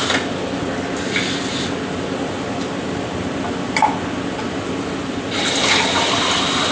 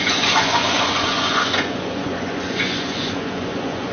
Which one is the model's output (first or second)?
second